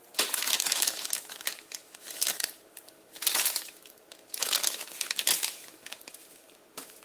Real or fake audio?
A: fake